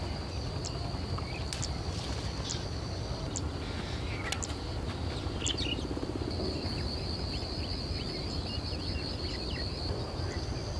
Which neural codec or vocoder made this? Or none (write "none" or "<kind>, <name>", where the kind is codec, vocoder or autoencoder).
none